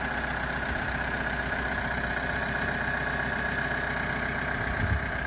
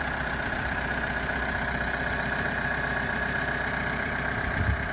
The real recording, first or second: first